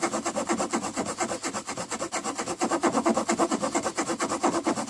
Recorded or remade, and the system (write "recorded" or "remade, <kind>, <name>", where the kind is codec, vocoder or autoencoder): recorded